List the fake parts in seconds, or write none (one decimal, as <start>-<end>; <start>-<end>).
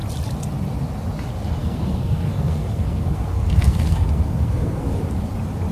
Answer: 1.6-5.0